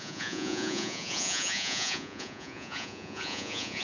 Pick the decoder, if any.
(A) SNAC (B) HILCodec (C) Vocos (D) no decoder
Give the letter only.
C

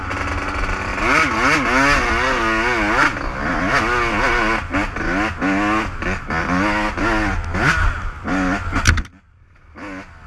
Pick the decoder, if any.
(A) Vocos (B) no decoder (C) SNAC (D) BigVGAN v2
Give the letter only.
B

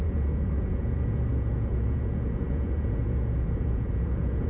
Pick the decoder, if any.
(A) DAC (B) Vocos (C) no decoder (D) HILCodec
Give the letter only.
B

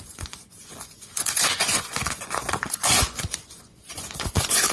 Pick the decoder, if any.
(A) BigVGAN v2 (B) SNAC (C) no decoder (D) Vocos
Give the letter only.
D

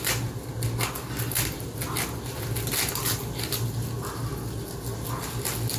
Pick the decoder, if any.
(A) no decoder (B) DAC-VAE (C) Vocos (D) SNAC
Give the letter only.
A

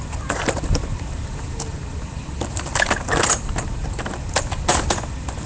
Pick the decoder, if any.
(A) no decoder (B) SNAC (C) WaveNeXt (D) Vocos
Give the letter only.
A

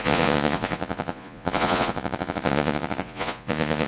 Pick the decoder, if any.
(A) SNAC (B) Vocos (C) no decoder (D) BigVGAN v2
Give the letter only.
B